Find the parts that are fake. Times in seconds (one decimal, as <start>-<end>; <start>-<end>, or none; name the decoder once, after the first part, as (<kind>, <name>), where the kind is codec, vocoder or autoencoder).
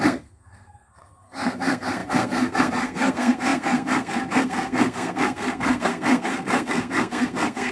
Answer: 0.0-7.7 (codec, SNAC)